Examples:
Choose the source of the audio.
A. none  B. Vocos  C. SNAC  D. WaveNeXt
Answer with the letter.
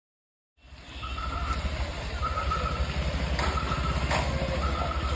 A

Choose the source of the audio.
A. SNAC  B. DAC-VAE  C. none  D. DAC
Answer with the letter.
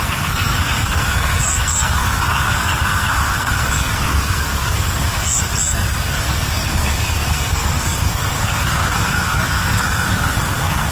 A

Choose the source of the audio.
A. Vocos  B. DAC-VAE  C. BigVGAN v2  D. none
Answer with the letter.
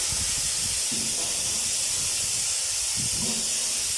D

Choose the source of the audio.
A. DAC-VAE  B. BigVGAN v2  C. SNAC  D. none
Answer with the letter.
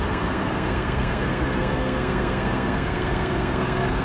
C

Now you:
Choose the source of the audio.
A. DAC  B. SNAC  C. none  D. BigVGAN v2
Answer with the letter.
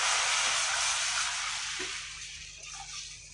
C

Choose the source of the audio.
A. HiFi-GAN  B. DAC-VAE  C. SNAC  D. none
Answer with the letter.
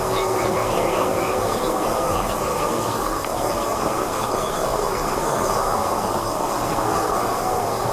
C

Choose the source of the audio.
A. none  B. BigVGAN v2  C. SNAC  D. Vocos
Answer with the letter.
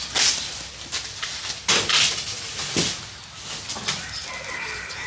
A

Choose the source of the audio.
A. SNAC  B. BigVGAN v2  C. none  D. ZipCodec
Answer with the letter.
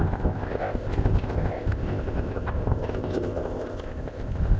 D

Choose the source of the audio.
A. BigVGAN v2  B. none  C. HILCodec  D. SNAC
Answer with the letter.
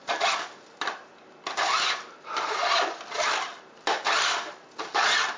B